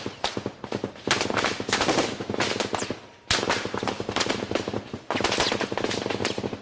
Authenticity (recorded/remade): recorded